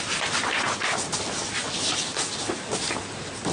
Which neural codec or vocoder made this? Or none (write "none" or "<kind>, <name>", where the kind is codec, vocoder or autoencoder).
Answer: none